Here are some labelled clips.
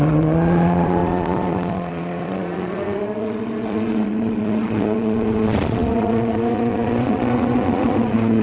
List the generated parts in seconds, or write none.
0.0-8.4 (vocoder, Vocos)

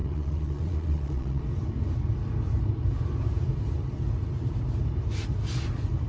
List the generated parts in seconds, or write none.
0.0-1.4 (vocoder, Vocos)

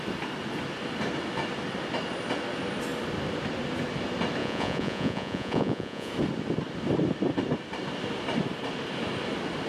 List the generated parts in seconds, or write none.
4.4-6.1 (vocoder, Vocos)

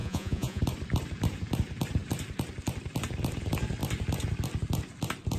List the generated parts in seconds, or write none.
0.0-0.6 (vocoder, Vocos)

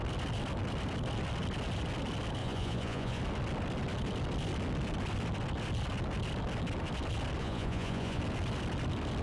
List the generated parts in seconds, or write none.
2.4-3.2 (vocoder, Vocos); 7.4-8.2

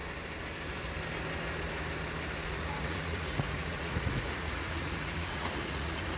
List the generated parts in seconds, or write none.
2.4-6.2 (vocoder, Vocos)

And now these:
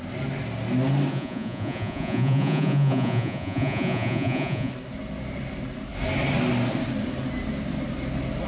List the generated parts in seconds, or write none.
1.1-4.7 (vocoder, Vocos)

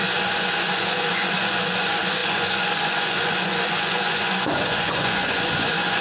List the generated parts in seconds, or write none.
0.0-6.0 (vocoder, Vocos)